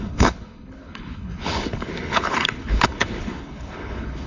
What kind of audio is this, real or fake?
fake